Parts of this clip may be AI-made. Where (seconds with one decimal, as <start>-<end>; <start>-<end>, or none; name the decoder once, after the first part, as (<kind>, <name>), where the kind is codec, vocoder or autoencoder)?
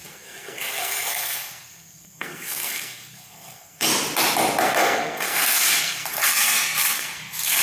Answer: 0.0-3.9 (codec, SNAC); 4.6-7.6